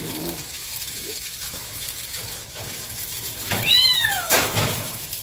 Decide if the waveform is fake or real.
fake